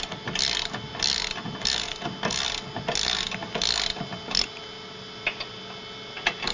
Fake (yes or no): no